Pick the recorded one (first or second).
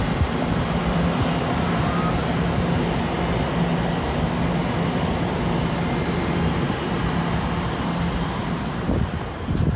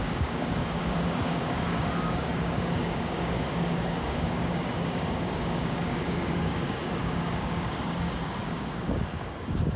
first